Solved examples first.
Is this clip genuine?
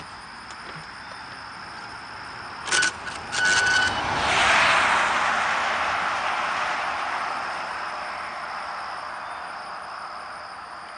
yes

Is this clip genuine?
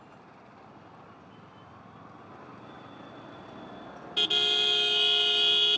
yes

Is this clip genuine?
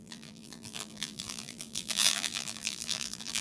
no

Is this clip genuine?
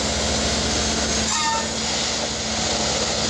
yes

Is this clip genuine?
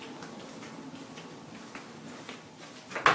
yes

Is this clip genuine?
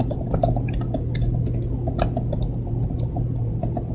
yes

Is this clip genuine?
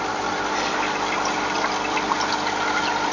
yes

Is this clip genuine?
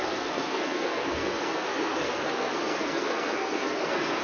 no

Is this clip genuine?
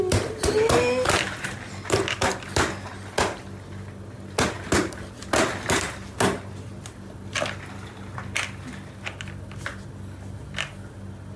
yes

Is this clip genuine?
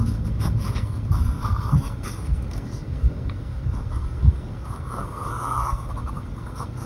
no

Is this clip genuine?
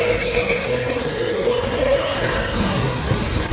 no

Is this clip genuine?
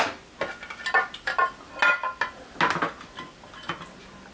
yes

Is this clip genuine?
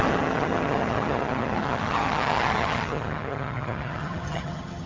no